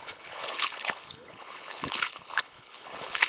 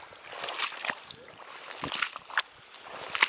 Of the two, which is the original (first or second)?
second